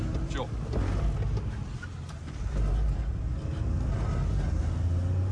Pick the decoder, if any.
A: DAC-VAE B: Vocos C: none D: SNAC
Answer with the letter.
C